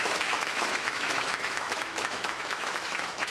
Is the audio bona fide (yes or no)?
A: no